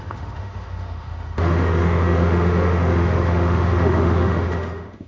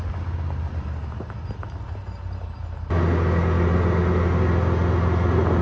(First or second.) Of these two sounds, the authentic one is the second